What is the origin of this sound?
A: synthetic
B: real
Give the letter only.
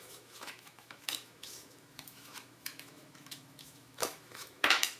A